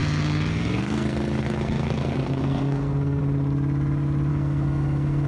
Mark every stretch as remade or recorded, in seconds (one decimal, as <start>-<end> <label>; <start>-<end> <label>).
0.0-3.2 remade; 3.2-4.3 recorded; 4.3-5.3 remade

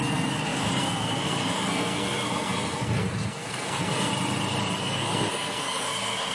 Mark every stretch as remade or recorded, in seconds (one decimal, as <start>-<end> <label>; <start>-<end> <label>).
0.0-4.1 remade; 4.1-4.8 recorded; 4.8-6.3 remade

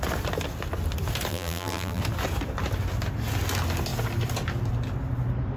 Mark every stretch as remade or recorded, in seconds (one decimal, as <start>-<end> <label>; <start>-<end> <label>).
0.0-1.3 recorded; 1.3-2.0 remade; 2.0-5.6 recorded

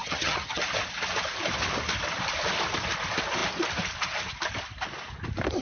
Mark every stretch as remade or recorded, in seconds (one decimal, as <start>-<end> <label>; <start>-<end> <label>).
0.0-0.6 remade; 0.6-5.6 recorded

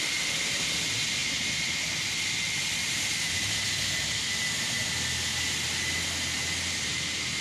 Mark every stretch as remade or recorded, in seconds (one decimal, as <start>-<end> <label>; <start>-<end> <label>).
0.0-7.4 recorded